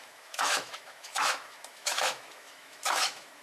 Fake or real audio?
fake